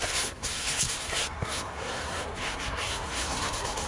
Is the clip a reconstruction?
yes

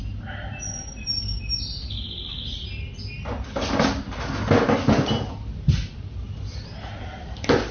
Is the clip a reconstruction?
no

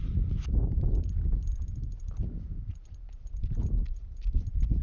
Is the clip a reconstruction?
no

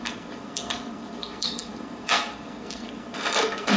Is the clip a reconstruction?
yes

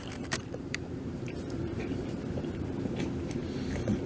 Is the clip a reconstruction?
yes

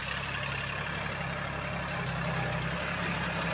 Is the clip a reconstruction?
no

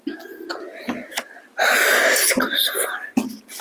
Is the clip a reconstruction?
no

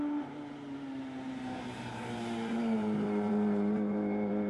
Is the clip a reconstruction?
yes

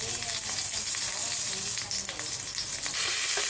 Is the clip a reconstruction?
no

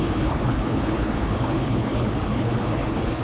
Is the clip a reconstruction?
yes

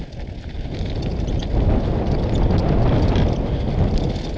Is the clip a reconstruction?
no